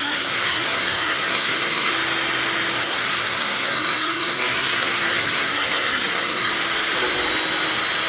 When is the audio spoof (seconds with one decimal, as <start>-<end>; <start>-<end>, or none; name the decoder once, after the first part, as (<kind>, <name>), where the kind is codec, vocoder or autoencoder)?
0.0-1.9 (codec, SNAC); 2.8-6.5